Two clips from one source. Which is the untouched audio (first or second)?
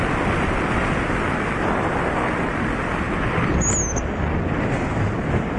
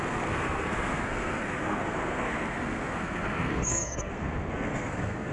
first